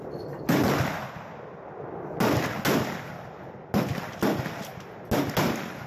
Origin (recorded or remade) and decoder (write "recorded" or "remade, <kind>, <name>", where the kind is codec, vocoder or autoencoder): recorded